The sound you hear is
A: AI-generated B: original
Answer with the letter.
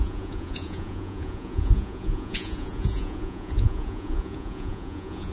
A